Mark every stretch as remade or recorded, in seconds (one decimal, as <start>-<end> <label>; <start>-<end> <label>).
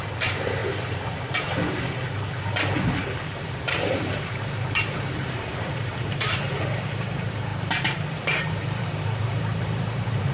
0.0-0.6 remade; 0.6-3.4 recorded; 3.4-10.3 remade